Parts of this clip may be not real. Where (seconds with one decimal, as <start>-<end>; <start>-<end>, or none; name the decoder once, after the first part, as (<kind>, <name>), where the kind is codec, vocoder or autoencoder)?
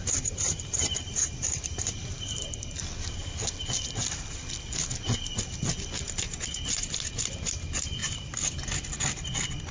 0.0-2.8 (vocoder, BigVGAN v2); 8.0-8.6